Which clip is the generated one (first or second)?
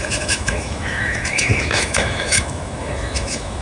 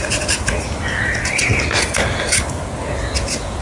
first